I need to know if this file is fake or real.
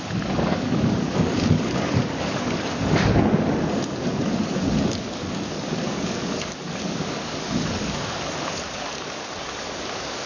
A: fake